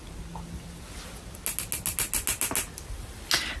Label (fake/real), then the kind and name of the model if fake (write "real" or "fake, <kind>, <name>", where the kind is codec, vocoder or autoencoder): real